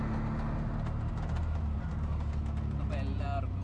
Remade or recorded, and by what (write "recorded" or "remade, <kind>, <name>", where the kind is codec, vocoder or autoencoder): recorded